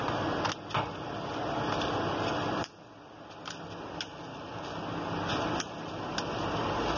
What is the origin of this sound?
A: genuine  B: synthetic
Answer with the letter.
A